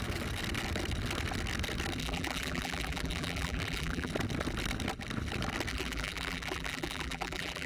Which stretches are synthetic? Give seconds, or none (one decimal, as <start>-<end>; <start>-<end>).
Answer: 2.0-4.1; 5.7-7.7

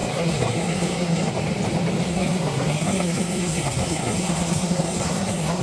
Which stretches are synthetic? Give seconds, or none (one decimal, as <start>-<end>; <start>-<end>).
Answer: 0.0-1.3; 2.1-5.6

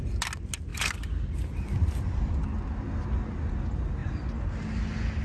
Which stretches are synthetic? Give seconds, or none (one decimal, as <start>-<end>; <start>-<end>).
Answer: none

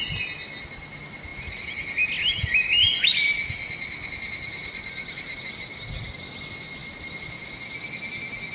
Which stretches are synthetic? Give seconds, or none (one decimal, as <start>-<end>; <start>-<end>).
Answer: none

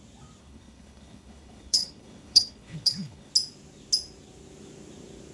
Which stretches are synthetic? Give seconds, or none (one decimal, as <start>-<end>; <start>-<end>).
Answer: 0.4-3.3

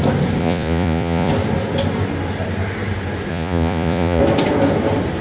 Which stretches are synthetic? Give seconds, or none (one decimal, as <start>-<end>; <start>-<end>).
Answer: 0.4-1.3; 3.3-4.2

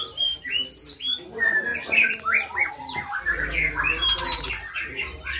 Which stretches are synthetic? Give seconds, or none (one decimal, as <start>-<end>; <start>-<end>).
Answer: 1.7-2.7; 4.0-4.5